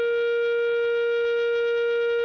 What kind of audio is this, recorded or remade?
recorded